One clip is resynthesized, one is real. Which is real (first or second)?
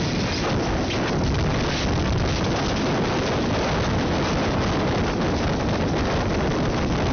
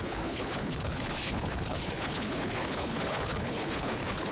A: first